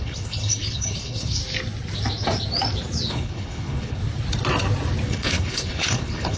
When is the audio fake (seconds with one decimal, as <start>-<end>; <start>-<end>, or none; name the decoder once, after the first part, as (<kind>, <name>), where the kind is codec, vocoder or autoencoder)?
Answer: 0.0-1.4 (codec, HILCodec); 3.1-4.0; 5.1-6.4